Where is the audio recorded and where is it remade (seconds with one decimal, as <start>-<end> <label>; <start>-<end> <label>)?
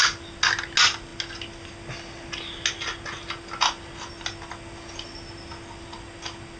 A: 0.0-6.6 recorded